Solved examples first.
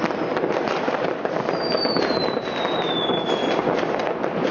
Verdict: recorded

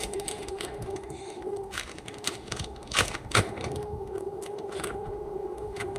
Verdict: remade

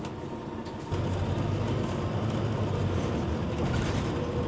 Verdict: recorded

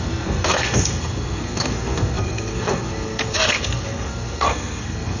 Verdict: remade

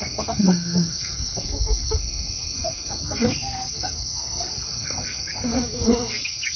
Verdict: remade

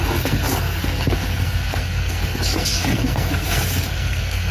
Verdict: remade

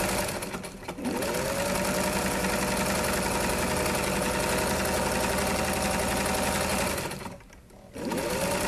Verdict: recorded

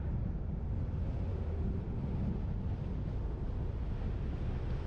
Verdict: recorded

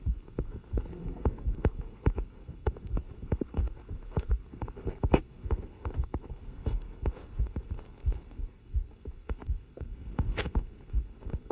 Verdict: remade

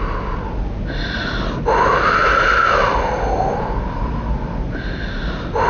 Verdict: recorded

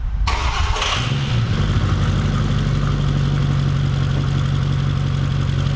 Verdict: recorded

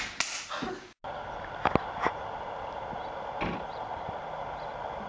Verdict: recorded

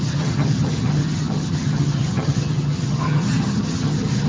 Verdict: remade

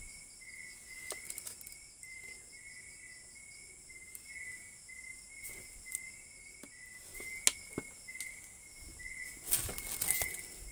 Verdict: recorded